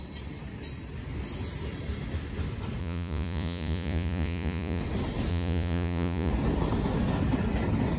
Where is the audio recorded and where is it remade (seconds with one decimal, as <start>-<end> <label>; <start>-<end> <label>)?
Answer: 0.0-2.8 recorded; 2.8-4.8 remade; 4.8-5.3 recorded; 5.3-6.3 remade; 6.3-8.0 recorded